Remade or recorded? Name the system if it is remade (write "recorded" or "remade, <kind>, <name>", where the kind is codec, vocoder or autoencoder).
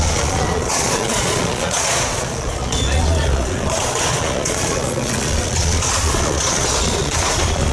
remade, vocoder, Vocos